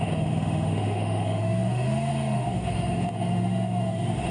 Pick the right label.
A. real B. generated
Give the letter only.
B